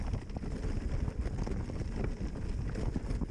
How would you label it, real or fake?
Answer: real